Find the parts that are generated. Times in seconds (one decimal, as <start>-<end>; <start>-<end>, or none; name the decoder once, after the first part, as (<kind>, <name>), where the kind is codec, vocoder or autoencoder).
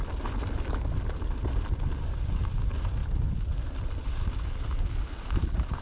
none